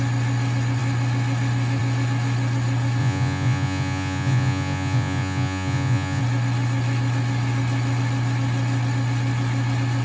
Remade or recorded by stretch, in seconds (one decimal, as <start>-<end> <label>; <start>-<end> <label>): 0.0-3.0 recorded; 3.0-6.2 remade; 6.2-10.0 recorded